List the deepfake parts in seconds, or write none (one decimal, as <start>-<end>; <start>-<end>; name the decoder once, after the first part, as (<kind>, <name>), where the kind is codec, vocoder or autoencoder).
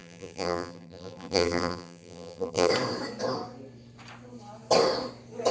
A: 0.0-2.7 (vocoder, BigVGAN v2)